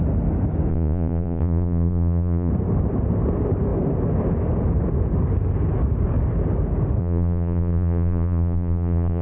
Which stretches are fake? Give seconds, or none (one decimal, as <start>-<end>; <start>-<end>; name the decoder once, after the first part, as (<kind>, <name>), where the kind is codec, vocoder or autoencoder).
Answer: 0.7-2.5 (vocoder, Vocos); 7.0-9.2